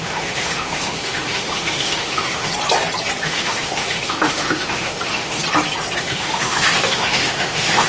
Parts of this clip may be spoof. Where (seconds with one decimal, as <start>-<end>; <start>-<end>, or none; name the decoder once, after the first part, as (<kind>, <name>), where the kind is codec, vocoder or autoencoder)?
0.0-2.5 (autoencoder, DAC-VAE); 3.2-5.4; 6.0-7.9